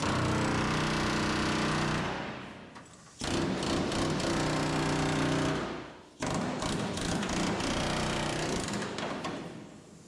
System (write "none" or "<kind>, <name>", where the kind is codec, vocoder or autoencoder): none